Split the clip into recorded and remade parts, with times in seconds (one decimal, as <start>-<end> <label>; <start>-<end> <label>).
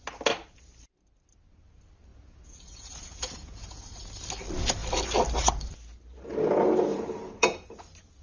0.0-2.1 recorded; 2.1-3.8 remade; 3.8-6.9 recorded; 6.9-7.7 remade; 7.7-8.2 recorded